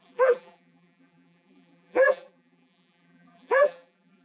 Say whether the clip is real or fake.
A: fake